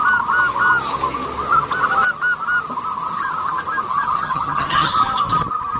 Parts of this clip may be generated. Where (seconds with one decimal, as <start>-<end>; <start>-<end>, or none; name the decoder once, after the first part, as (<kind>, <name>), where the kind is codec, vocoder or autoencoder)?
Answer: 3.9-4.9 (vocoder, HiFi-GAN)